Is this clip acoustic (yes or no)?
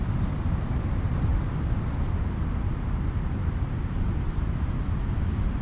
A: yes